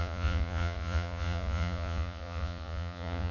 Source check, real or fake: fake